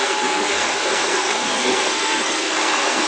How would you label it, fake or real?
fake